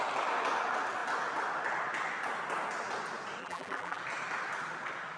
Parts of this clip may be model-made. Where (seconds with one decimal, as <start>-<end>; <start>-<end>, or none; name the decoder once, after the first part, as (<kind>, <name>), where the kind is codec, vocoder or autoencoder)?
3.4-4.0 (vocoder, BigVGAN v2)